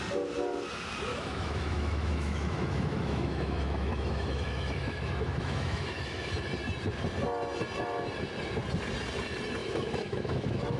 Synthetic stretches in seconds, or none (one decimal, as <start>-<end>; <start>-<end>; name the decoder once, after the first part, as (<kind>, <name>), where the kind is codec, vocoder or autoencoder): 1.1-6.3 (autoencoder, DAC-VAE); 9.6-10.8